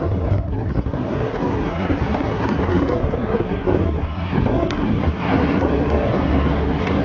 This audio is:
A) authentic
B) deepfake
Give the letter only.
B